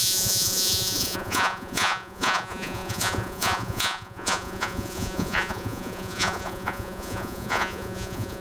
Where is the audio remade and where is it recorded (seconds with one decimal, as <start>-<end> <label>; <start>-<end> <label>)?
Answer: 0.0-8.4 remade